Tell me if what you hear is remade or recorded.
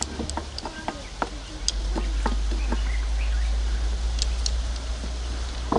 recorded